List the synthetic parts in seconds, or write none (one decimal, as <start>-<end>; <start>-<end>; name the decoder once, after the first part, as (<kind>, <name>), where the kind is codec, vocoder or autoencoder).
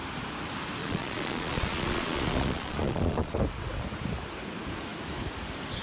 0.8-3.4 (vocoder, Vocos)